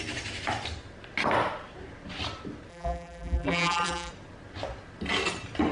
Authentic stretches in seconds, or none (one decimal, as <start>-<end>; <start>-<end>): 0.0-2.7; 4.1-5.7